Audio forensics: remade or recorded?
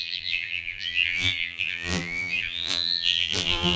remade